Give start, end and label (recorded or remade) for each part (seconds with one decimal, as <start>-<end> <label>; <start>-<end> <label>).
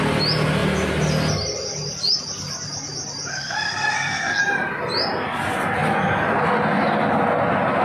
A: 0.0-3.3 recorded; 3.3-4.4 remade; 4.4-7.8 recorded